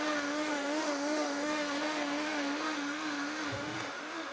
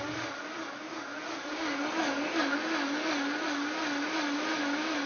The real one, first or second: second